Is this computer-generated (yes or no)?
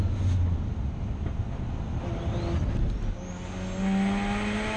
no